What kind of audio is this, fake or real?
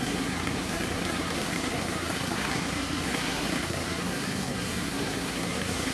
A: fake